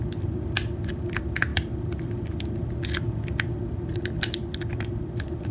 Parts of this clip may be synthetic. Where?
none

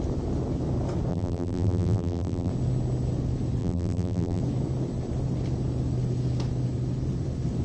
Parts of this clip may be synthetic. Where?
1.1-2.5; 3.6-4.4

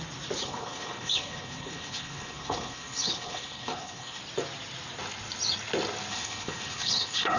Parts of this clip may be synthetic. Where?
0.4-4.2; 6.1-7.4

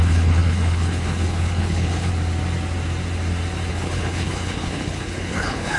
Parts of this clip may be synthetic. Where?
0.0-2.1; 3.7-5.8

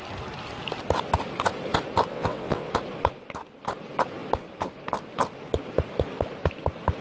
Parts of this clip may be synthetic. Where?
2.1-2.7

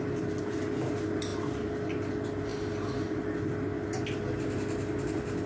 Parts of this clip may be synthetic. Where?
none

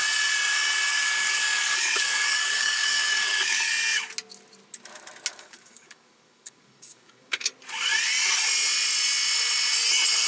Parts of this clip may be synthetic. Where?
0.9-3.7; 5.3-7.5